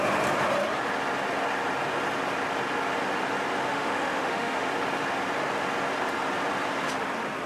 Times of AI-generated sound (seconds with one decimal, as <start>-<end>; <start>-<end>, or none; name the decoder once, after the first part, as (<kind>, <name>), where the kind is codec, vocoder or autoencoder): 3.7-4.7 (autoencoder, DAC-VAE)